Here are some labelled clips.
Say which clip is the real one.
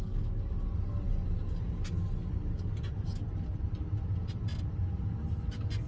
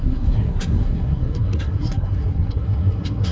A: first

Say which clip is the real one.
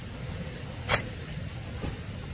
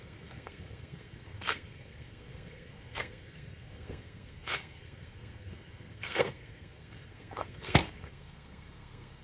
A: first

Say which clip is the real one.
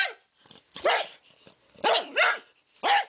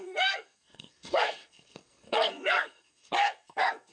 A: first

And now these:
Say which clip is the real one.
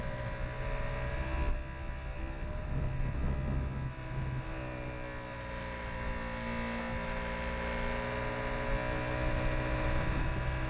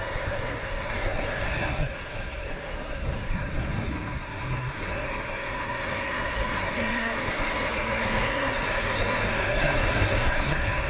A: first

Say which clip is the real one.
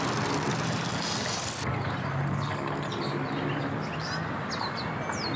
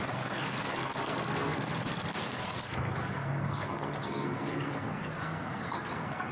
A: first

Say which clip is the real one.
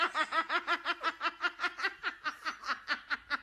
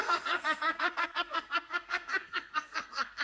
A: first